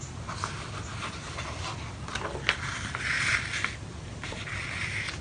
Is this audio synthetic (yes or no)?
no